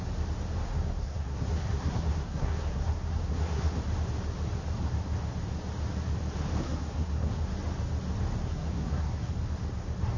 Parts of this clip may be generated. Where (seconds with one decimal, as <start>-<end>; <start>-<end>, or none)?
0.7-3.8; 6.6-7.5; 8.4-9.3